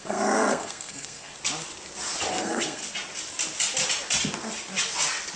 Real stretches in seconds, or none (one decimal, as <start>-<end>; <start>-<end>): 1.3-2.3; 2.8-5.4